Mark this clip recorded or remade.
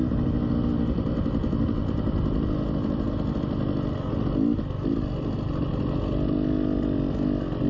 recorded